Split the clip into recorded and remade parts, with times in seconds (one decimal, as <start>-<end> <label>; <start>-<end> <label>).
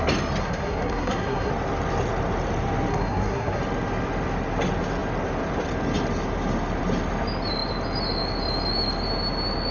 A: 0.0-0.4 recorded; 0.4-1.5 remade; 1.5-2.9 recorded; 2.9-3.6 remade; 3.6-9.7 recorded